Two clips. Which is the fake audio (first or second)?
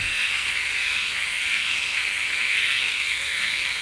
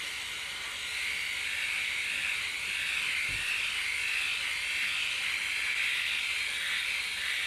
first